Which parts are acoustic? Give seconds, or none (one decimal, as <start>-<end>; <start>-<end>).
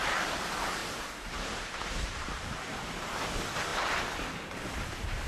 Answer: 0.0-0.8; 3.0-3.7